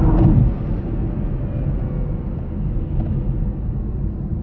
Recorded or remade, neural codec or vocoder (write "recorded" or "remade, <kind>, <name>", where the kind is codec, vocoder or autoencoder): recorded